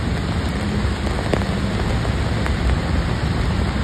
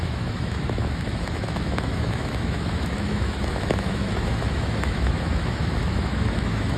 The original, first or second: first